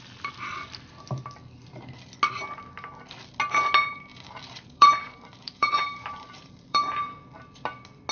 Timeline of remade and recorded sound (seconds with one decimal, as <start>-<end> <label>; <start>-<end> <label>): 0.0-4.1 recorded; 4.1-7.2 remade; 7.2-8.1 recorded